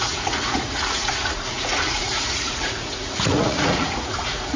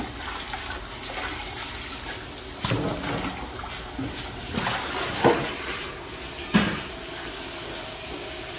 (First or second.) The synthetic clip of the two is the first